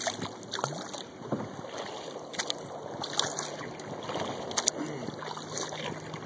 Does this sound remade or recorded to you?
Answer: recorded